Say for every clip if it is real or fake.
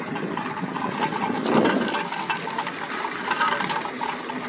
real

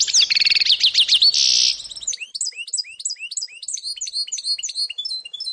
real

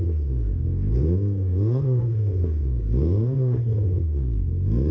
fake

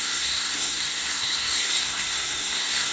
fake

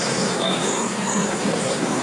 fake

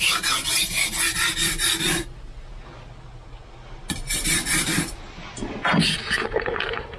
real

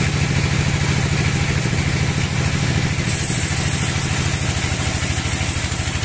real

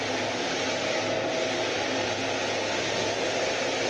real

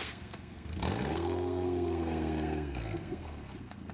fake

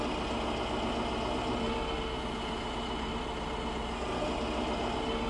real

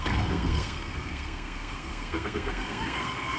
fake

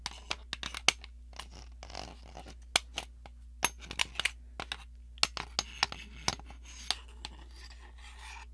real